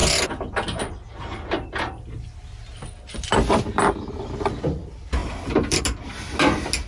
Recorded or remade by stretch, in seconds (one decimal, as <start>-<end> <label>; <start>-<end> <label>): 0.0-0.8 remade; 0.8-2.8 recorded; 2.8-4.5 remade; 4.5-5.2 recorded; 5.2-5.8 remade; 5.8-6.9 recorded